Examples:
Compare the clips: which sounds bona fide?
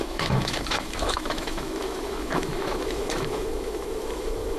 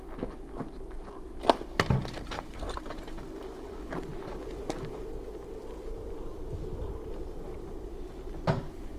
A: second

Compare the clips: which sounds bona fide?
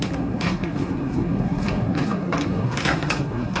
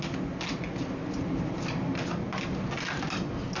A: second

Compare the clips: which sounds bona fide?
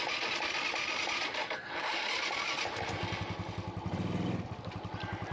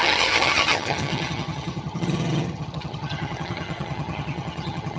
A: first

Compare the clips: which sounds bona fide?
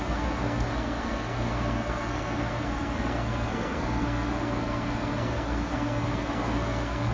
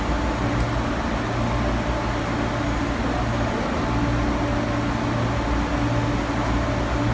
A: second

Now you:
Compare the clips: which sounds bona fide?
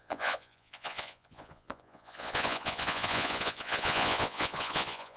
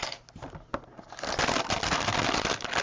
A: second